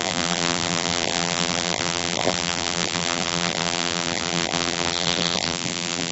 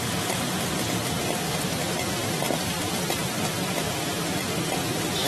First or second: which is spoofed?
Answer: first